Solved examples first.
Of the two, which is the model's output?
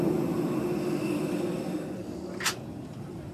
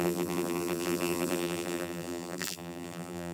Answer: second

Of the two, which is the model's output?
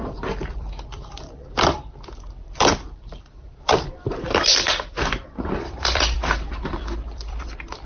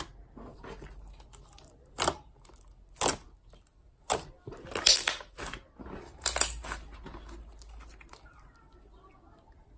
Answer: first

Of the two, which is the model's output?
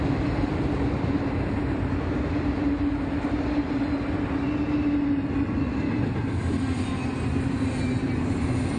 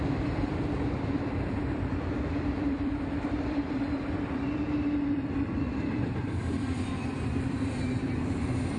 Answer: second